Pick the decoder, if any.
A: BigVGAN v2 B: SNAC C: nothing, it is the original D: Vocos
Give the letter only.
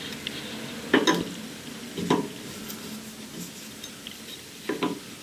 C